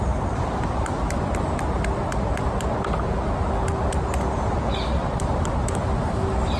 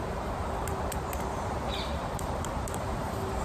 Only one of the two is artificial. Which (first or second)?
second